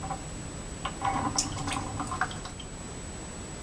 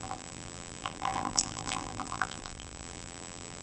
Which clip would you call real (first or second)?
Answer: first